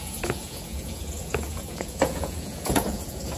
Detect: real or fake fake